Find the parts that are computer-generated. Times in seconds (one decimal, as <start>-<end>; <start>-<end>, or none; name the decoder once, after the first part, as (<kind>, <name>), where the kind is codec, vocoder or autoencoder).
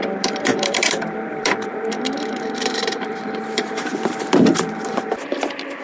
0.0-5.8 (vocoder, BigVGAN v2)